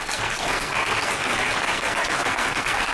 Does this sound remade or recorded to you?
remade